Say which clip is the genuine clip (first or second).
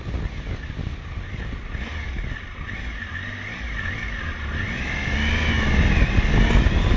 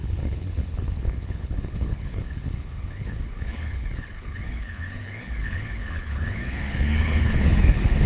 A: first